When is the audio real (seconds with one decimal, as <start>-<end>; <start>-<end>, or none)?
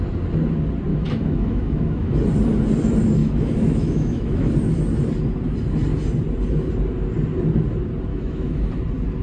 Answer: 0.0-0.9; 2.1-3.2; 4.5-8.1; 8.7-9.2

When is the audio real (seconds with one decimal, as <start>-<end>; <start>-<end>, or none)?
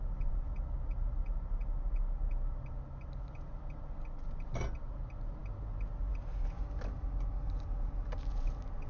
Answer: 0.0-8.9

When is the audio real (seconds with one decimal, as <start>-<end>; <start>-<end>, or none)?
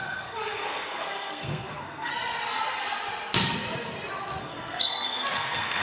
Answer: 2.1-4.4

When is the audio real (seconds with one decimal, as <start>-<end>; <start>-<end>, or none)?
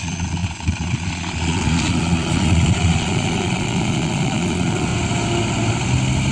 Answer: 4.9-6.3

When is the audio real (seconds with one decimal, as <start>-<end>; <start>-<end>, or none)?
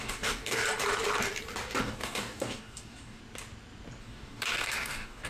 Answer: 0.6-1.8; 3.2-4.0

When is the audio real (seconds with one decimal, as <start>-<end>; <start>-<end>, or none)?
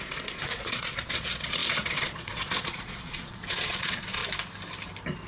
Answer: 4.2-5.3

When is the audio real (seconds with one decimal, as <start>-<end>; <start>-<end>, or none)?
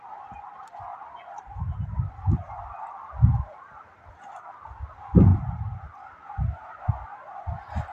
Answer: 0.0-0.9; 2.6-5.3; 6.1-7.9